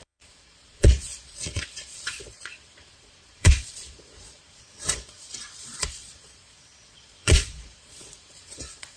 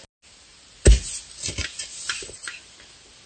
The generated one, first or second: first